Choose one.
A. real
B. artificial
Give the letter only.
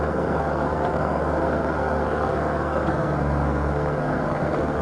B